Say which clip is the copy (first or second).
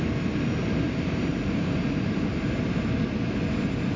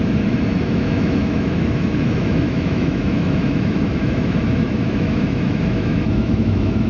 second